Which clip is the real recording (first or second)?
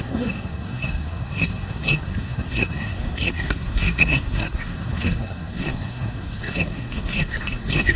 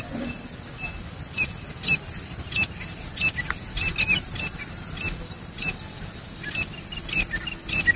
second